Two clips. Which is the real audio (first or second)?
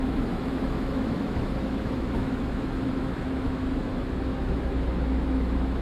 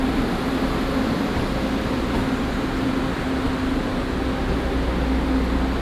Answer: second